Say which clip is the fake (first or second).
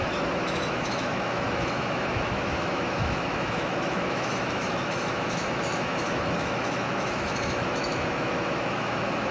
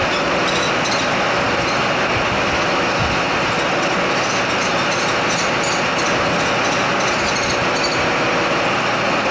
first